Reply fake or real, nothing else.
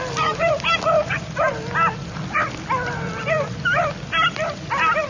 fake